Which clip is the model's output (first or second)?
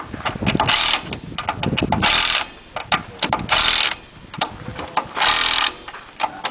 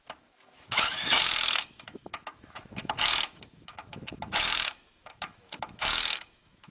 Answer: second